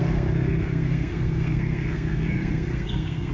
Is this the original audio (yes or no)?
no